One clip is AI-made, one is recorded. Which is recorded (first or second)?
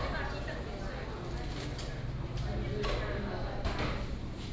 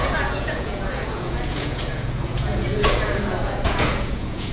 first